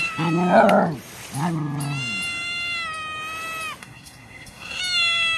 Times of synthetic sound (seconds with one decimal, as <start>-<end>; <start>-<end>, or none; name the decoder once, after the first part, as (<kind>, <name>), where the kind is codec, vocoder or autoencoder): 3.8-4.8 (codec, SNAC)